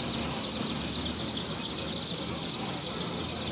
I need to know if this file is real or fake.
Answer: real